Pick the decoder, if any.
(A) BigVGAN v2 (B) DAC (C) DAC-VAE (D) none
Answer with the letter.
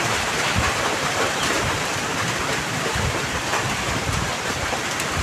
A